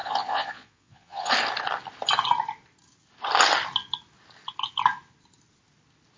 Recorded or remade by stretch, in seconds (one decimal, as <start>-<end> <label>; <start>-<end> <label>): 0.0-1.3 remade; 1.3-6.2 recorded